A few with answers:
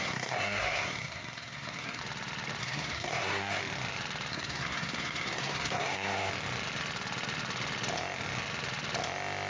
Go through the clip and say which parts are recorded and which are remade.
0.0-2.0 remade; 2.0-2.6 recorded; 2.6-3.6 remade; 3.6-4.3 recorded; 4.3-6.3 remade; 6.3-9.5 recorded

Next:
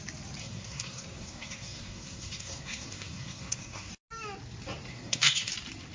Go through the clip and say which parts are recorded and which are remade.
0.0-0.4 recorded; 0.4-3.9 remade; 3.9-4.9 recorded; 4.9-5.5 remade; 5.5-5.9 recorded

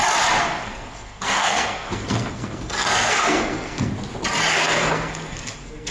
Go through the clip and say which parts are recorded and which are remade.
0.0-0.4 recorded; 0.4-3.9 remade; 3.9-4.5 recorded; 4.5-5.9 remade

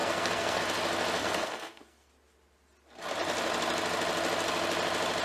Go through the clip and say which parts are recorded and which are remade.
0.0-0.6 remade; 0.6-1.2 recorded; 1.2-2.1 remade; 2.1-5.2 recorded

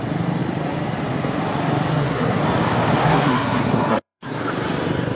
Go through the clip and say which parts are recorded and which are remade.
0.0-1.9 recorded; 1.9-2.4 remade; 2.4-3.0 recorded; 3.0-4.4 remade; 4.4-5.2 recorded

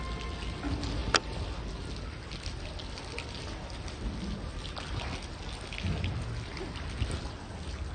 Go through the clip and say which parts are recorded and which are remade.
0.0-7.9 recorded